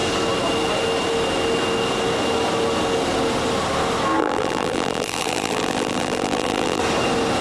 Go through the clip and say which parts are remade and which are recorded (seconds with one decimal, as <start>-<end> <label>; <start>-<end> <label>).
0.0-4.2 recorded; 4.2-6.8 remade; 6.8-7.4 recorded

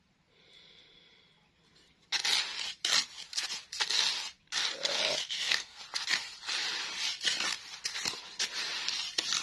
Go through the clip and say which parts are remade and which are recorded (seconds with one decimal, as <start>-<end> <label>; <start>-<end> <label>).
0.0-5.2 recorded; 5.2-5.8 remade; 5.8-9.4 recorded

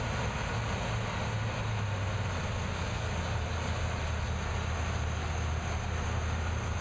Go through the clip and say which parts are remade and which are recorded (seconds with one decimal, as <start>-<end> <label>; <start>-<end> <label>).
0.0-6.8 recorded